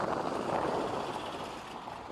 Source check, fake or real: real